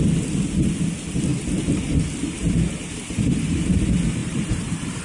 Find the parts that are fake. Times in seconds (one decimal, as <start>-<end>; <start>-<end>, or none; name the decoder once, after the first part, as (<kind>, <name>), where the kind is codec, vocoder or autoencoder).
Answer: 4.2-5.0 (vocoder, BigVGAN v2)